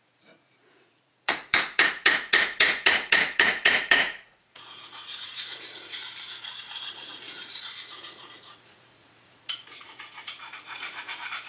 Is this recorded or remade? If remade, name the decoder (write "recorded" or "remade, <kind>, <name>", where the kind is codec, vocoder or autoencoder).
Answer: remade, vocoder, Vocos